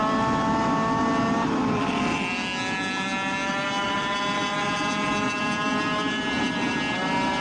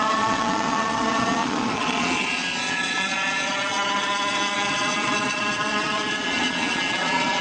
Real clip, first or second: first